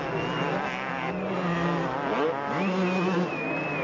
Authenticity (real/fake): real